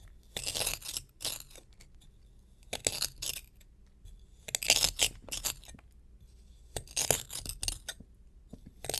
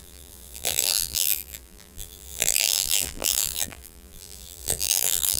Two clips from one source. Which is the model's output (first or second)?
second